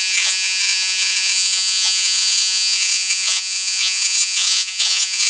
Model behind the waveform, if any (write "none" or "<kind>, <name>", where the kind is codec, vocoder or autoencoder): vocoder, Vocos